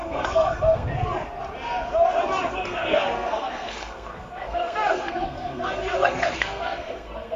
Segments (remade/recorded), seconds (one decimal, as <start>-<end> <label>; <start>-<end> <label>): 0.0-0.9 remade; 0.9-2.5 recorded; 2.5-7.4 remade